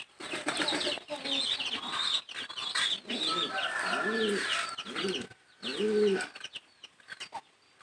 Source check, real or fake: real